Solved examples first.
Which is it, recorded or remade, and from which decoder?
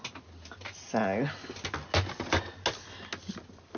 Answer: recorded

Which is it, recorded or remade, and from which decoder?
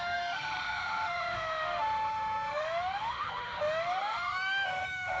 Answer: remade, autoencoder, DAC-VAE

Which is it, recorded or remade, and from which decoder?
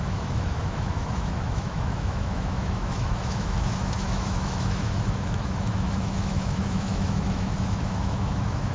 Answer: remade, autoencoder, DAC-VAE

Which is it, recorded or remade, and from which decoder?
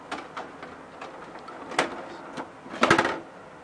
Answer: recorded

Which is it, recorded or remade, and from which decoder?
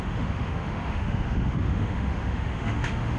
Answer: remade, autoencoder, DAC-VAE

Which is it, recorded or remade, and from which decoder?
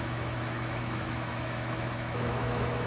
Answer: remade, autoencoder, DAC-VAE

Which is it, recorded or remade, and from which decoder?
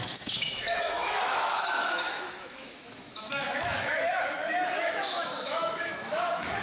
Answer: remade, autoencoder, DAC-VAE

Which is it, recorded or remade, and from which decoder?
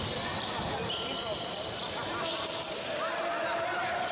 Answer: recorded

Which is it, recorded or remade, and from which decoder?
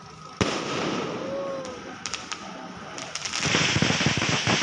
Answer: recorded